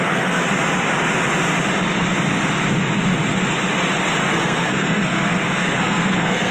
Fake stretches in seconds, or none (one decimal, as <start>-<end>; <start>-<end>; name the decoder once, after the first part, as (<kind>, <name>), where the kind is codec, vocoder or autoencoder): 0.0-0.4 (codec, SNAC); 4.3-6.5